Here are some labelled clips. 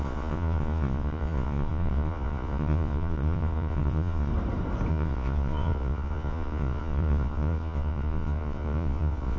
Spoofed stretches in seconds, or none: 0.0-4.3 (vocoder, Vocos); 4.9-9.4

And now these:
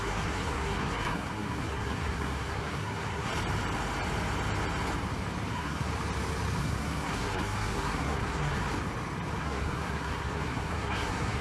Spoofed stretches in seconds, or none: 0.0-3.3 (codec, SNAC); 5.5-5.9; 6.6-8.6; 9.4-11.4